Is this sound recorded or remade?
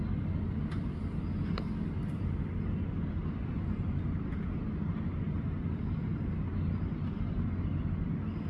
recorded